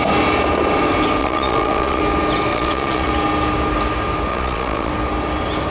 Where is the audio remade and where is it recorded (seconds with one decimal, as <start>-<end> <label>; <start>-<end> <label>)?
0.0-1.2 recorded; 1.2-2.0 remade; 2.0-2.5 recorded; 2.5-3.1 remade; 3.1-4.3 recorded; 4.3-4.9 remade; 4.9-5.7 recorded